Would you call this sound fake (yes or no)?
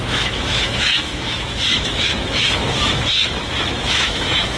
yes